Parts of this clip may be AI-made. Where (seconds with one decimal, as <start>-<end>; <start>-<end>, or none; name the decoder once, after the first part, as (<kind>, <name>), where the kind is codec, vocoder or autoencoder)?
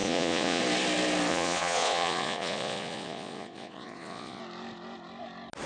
0.0-0.6 (vocoder, Vocos); 1.3-4.4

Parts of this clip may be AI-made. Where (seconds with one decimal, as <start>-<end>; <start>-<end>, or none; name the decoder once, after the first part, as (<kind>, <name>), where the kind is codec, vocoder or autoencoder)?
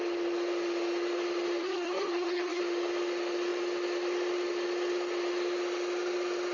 1.6-2.6 (codec, SNAC)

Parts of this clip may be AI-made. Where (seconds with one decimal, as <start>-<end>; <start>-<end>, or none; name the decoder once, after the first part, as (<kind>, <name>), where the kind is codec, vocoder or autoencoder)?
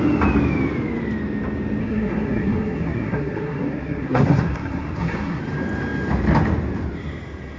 1.8-5.4 (codec, SNAC)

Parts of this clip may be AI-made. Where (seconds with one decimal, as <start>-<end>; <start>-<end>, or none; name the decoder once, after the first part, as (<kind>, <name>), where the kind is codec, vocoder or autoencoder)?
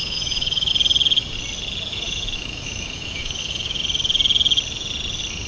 0.0-0.7 (autoencoder, DAC-VAE); 1.9-3.8